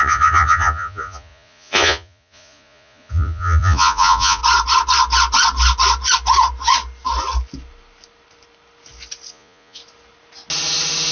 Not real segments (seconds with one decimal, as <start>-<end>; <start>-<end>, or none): 0.0-4.4; 9.3-9.8